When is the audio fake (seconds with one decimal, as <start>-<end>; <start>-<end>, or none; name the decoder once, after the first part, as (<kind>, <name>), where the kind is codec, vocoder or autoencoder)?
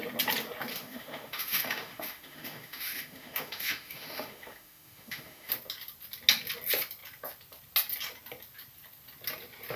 0.7-5.5 (autoencoder, DAC-VAE)